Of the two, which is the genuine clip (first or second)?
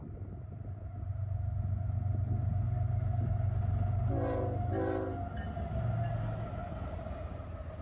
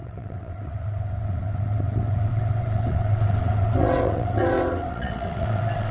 first